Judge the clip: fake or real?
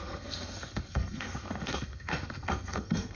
fake